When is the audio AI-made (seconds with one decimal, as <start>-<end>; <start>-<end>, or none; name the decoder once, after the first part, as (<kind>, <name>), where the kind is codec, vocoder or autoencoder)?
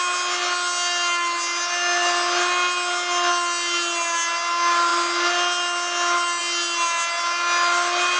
none